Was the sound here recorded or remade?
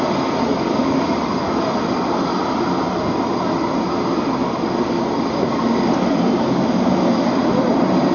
remade